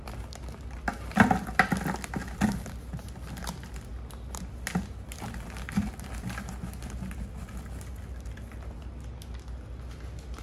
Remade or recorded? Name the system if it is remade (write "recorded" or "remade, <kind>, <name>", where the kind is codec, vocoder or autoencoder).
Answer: recorded